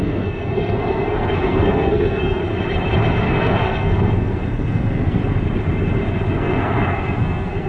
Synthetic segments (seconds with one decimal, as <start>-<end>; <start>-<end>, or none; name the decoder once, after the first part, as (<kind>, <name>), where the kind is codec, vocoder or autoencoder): 0.0-2.4 (codec, SNAC); 3.2-5.2; 6.3-7.7